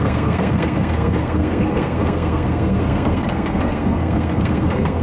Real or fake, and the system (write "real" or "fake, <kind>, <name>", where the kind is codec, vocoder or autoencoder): fake, codec, SNAC